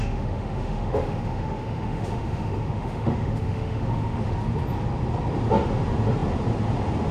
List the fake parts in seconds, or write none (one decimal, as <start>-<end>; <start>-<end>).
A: 0.0-4.3